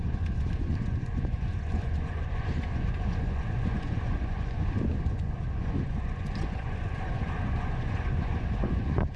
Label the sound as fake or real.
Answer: fake